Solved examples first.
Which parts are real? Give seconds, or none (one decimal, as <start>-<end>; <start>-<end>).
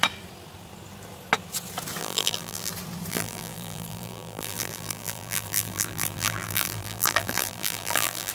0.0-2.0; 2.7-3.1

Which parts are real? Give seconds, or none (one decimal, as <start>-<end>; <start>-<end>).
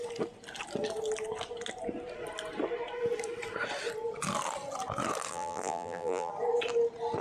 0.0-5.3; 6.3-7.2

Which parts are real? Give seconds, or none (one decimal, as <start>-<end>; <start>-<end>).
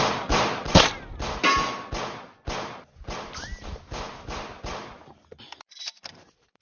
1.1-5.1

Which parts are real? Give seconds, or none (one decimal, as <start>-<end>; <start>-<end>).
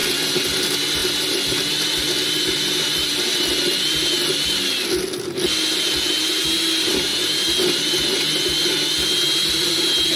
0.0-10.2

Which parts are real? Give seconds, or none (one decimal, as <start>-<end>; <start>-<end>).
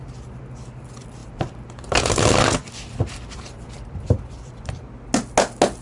0.0-1.2; 4.7-5.8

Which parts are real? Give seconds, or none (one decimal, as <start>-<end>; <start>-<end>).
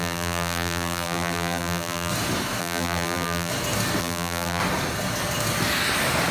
2.1-2.6; 3.5-4.0; 4.6-6.3